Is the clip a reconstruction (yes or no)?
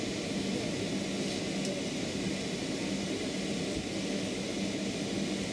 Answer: no